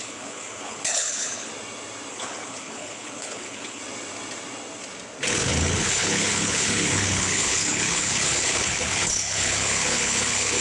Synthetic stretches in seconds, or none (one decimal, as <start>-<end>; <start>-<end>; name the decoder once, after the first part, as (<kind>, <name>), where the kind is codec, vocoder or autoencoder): 0.0-1.5 (codec, HILCodec); 2.1-3.8; 5.3-10.6